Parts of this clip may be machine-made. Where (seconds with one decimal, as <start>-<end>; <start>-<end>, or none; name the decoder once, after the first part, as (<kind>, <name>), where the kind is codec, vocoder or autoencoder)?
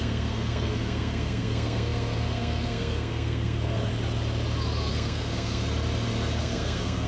0.0-3.9 (codec, SNAC); 4.9-5.7; 6.4-7.1